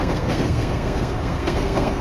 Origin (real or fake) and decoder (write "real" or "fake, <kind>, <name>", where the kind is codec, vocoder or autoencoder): fake, codec, SNAC